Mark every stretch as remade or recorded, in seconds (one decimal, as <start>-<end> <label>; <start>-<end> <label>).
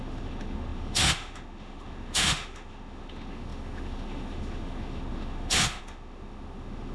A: 0.0-6.9 remade